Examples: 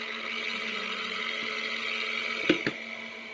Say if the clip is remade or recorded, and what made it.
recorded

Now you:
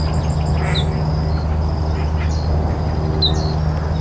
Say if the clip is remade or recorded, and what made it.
recorded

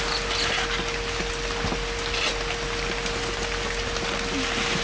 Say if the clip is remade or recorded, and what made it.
recorded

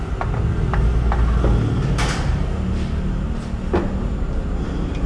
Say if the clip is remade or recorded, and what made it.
recorded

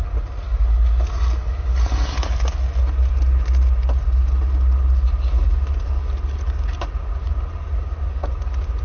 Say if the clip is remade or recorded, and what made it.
recorded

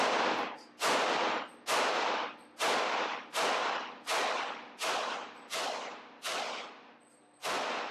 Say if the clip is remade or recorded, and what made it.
recorded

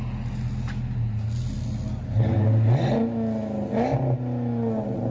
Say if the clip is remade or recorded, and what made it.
recorded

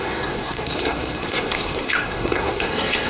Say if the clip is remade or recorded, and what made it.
remade, codec, SNAC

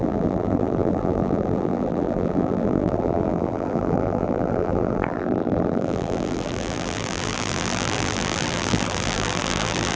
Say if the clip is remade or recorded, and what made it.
remade, vocoder, BigVGAN v2